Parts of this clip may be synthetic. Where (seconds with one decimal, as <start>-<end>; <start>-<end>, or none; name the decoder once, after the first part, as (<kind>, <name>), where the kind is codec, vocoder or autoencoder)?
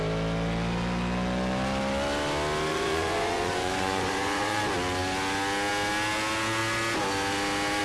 2.7-4.6 (vocoder, Vocos)